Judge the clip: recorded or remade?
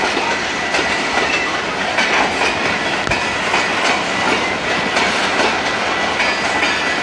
recorded